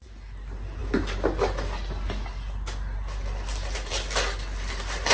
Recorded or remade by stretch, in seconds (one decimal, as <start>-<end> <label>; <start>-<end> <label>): 0.0-5.1 recorded